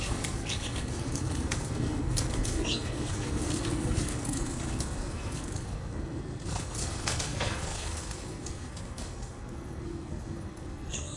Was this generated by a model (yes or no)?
yes